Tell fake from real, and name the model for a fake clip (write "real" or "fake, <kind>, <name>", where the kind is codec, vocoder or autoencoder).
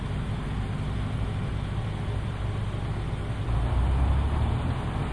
real